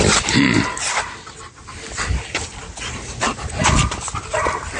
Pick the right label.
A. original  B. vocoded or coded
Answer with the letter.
A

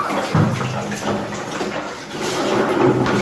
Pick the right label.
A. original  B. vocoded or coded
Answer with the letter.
A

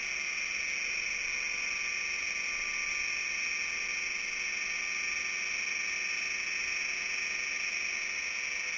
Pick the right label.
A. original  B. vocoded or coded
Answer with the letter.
A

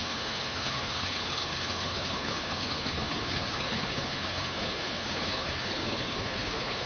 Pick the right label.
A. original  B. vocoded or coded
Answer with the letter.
B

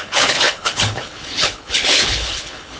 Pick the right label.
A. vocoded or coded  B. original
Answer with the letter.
A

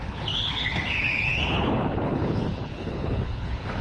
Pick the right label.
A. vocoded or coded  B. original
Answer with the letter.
A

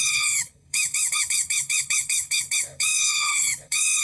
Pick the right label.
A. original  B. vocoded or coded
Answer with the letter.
B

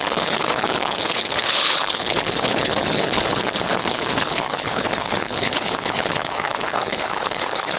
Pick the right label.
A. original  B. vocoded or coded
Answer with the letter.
B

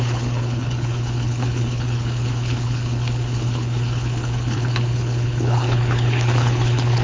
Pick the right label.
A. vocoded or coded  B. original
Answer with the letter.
A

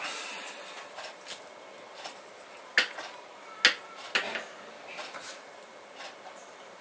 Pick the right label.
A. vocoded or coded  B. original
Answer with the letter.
B